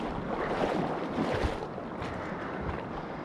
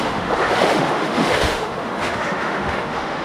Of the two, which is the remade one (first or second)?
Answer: second